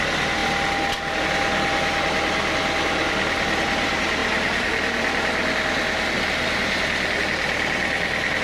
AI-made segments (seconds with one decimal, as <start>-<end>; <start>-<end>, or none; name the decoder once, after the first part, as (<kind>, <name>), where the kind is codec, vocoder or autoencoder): none

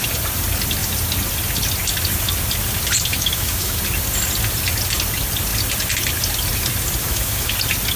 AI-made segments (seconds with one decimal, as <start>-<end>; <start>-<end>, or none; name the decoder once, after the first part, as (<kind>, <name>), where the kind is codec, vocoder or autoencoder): 3.1-3.8 (autoencoder, DAC-VAE); 7.0-7.5

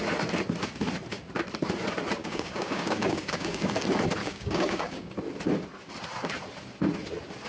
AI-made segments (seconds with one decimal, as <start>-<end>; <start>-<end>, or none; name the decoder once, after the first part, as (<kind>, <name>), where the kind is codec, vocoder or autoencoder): 2.2-3.7 (codec, DAC); 4.2-5.2

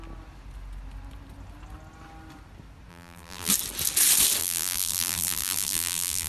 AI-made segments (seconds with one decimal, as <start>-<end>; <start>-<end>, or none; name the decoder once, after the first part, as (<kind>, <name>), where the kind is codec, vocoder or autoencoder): 2.9-3.5 (vocoder, BigVGAN v2); 4.4-6.3

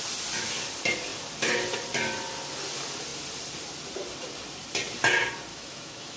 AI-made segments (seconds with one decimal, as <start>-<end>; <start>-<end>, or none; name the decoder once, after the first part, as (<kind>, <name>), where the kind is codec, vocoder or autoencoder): 5.5-6.2 (autoencoder, DAC-VAE)

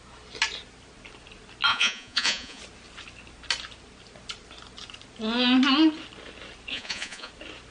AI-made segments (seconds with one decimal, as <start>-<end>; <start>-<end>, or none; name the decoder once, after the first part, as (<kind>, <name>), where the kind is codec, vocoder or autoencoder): 1.7-2.6 (vocoder, Vocos); 6.7-7.3

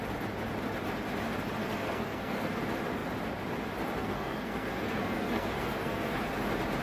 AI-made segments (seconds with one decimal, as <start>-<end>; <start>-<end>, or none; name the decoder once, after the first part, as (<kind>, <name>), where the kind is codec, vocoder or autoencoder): 1.6-2.6 (codec, SNAC); 4.0-6.3

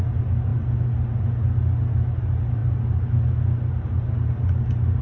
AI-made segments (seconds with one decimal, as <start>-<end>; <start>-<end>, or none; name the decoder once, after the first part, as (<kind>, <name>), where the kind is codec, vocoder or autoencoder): none